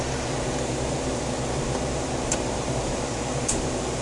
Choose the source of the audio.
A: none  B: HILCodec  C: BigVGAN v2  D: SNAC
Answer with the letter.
C